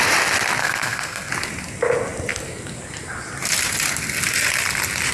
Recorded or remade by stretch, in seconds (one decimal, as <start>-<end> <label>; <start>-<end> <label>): 0.0-0.6 recorded; 0.6-1.3 remade; 1.3-5.1 recorded